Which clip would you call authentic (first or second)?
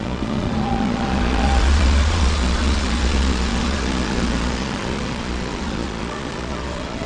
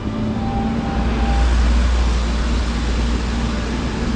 second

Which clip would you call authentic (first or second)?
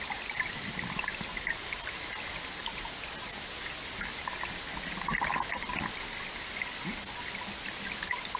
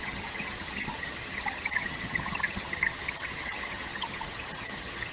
first